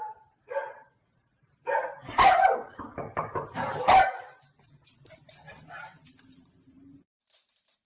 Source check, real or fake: fake